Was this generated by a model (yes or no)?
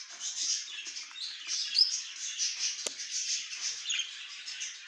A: no